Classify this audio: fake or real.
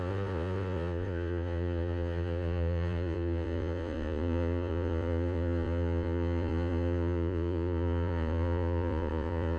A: fake